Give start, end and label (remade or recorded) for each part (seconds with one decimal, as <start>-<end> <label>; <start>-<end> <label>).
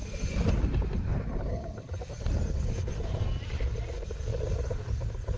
0.0-3.2 remade; 3.2-5.4 recorded